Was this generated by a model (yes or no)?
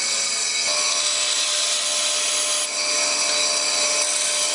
no